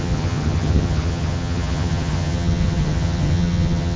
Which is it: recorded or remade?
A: remade